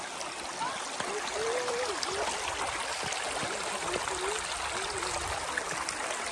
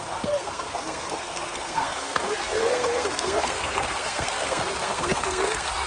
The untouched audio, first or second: first